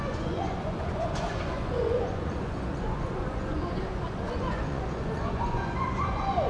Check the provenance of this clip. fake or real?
fake